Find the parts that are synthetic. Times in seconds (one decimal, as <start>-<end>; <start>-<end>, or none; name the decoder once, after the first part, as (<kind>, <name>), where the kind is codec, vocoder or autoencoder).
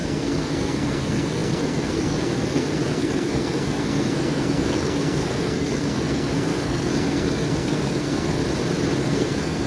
0.0-8.4 (codec, SNAC); 9.0-9.7